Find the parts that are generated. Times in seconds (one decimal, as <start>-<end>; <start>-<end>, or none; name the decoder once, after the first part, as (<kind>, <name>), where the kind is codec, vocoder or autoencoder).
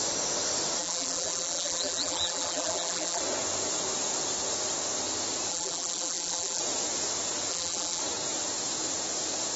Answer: 0.8-3.2 (vocoder, BigVGAN v2); 5.5-6.6; 7.5-8.0